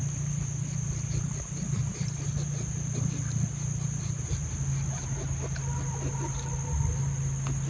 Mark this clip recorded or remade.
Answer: recorded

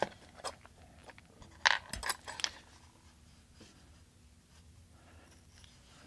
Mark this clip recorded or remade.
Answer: recorded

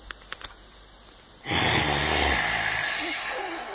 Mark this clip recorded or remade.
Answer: recorded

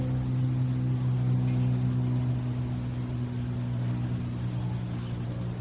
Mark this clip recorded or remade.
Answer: recorded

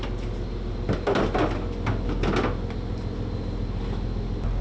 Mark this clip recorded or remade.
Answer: recorded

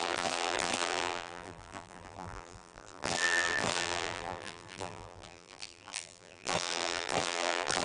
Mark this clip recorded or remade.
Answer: remade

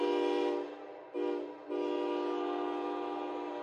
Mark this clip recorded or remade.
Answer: recorded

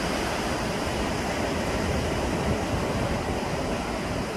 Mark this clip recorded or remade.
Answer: recorded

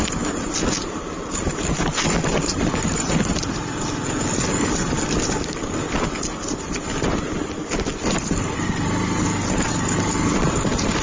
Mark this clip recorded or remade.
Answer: recorded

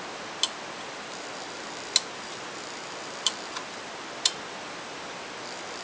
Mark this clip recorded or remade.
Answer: recorded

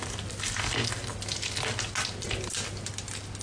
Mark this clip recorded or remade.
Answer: recorded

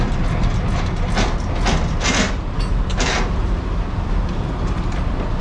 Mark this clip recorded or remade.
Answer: recorded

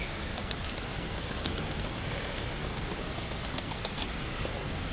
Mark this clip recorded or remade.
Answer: remade